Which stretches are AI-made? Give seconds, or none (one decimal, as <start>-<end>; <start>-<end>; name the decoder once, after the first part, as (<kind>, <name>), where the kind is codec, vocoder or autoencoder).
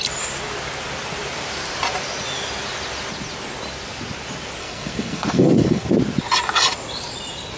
4.6-5.9 (codec, SNAC)